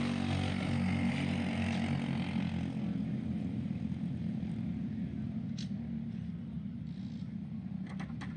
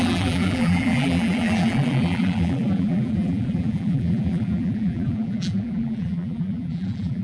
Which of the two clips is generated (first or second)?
second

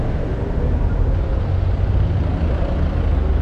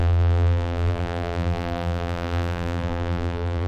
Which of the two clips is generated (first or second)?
second